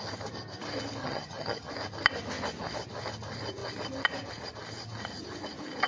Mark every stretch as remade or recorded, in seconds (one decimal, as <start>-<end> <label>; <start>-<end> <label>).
0.0-1.0 recorded; 1.0-1.7 remade; 1.7-5.9 recorded